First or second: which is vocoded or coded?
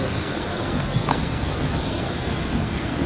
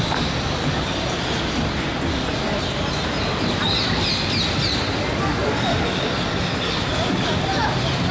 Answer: first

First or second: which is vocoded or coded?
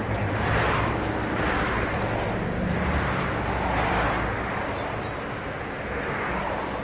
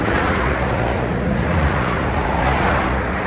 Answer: second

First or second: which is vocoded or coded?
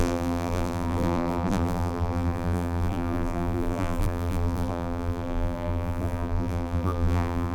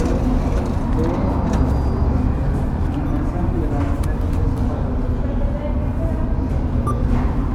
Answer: first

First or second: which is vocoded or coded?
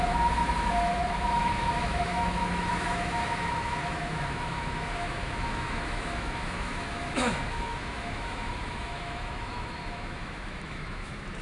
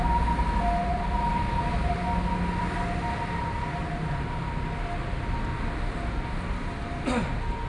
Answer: first